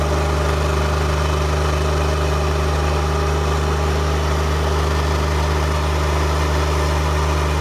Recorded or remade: recorded